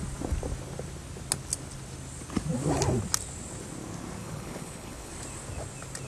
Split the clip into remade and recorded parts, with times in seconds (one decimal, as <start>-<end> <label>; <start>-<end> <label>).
0.0-4.2 recorded; 4.2-5.1 remade; 5.1-6.1 recorded